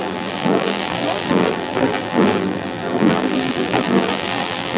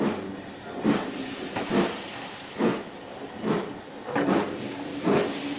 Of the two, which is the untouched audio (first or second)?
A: second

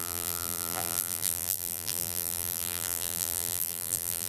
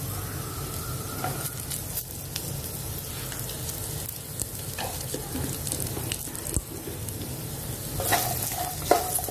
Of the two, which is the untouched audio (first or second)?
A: second